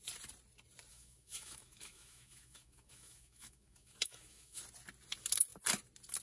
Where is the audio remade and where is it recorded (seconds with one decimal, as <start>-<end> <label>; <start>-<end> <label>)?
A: 0.0-0.9 recorded; 0.9-4.6 remade; 4.6-6.2 recorded